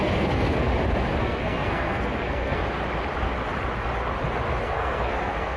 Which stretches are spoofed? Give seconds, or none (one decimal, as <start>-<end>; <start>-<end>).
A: 0.0-0.7; 1.2-2.6; 4.6-5.6